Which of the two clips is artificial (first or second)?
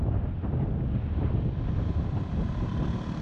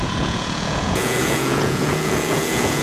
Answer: second